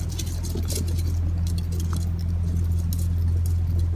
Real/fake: real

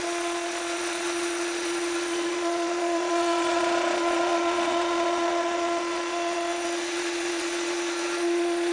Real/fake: fake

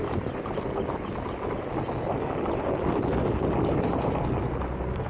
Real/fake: real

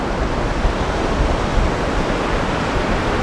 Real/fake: real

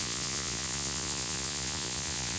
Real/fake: fake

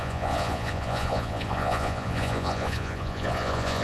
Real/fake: fake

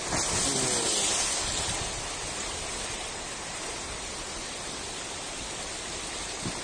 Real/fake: real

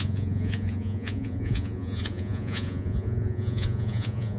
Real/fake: fake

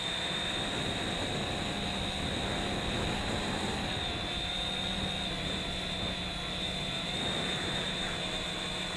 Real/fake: real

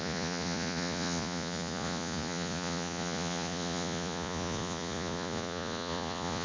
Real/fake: fake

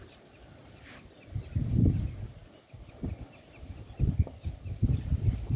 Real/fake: real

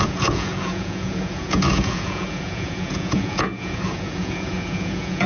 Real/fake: fake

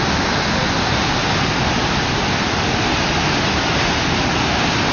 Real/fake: real